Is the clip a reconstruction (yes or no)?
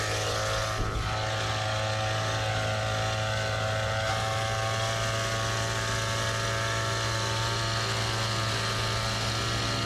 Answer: no